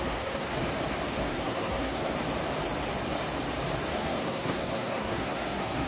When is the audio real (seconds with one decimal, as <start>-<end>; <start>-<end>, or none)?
0.6-1.2; 2.1-3.9